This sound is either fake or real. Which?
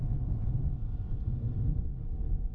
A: real